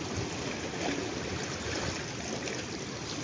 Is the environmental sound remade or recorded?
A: recorded